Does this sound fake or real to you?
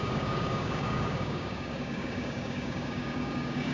fake